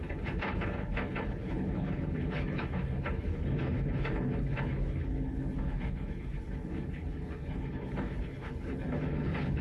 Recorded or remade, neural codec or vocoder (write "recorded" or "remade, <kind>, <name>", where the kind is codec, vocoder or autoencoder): remade, codec, HILCodec